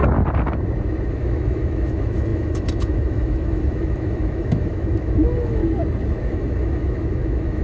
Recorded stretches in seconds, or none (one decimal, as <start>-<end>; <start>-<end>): 0.0-1.1; 5.6-6.2